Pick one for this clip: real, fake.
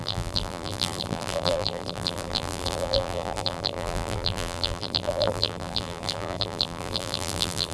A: fake